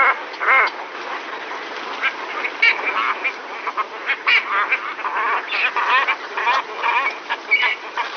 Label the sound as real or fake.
real